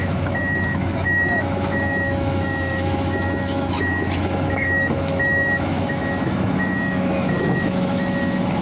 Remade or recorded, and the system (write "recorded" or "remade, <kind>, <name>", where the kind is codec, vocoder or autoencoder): remade, autoencoder, DAC-VAE